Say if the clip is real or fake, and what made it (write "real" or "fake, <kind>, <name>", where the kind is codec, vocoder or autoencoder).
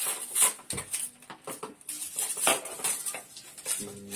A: real